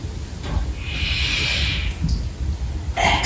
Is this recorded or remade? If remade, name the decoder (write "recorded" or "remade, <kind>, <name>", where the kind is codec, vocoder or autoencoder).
recorded